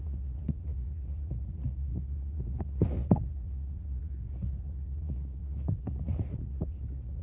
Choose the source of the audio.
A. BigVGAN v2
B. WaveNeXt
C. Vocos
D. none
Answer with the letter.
C